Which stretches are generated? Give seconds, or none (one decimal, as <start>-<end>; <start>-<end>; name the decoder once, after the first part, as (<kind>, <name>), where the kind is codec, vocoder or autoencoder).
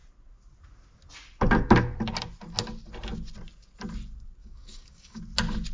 4.4-5.2 (codec, DAC)